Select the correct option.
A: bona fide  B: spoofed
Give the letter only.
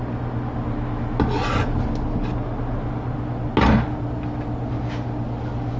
A